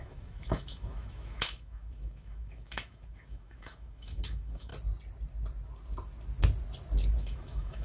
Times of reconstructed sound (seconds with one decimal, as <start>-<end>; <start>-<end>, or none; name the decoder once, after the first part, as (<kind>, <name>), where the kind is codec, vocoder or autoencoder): 0.0-4.7 (autoencoder, DAC-VAE); 7.2-7.8